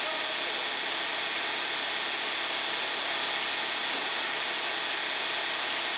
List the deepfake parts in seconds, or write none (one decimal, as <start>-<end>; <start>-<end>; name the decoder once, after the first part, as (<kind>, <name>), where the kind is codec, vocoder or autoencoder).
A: none